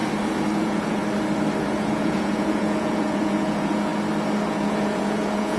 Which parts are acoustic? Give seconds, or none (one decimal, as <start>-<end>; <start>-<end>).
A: 0.0-0.6; 1.0-1.6; 3.9-4.5